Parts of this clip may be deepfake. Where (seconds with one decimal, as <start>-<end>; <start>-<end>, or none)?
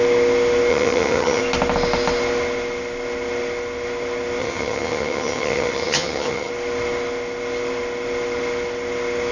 0.7-1.4; 4.4-6.5